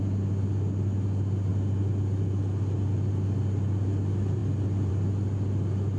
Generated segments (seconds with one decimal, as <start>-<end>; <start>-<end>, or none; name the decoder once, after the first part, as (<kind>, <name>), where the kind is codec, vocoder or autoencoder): none